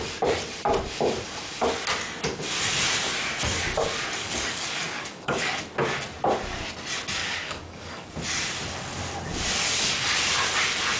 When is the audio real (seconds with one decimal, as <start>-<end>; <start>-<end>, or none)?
0.0-4.2; 5.6-7.2; 8.1-11.0